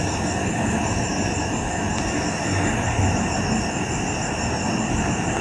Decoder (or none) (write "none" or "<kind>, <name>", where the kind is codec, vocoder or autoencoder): none